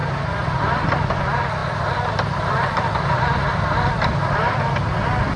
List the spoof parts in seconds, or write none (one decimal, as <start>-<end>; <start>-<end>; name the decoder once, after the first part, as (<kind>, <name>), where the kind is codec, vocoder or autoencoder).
0.0-1.2 (vocoder, BigVGAN v2); 1.6-4.6